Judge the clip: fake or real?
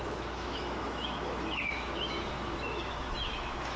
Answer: fake